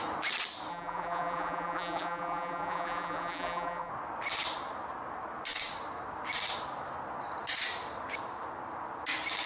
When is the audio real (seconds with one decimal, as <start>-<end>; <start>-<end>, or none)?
0.0-0.7; 3.9-9.5